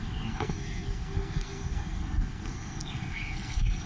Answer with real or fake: fake